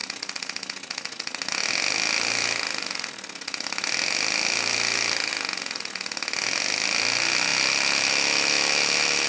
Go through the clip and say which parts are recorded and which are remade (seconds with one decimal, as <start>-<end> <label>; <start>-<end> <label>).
0.0-9.3 recorded